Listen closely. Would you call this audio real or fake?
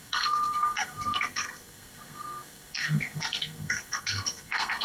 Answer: fake